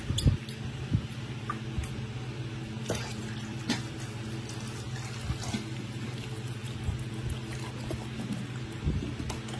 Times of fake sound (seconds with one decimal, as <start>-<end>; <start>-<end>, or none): 3.1-4.2